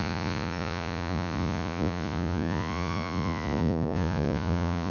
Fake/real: fake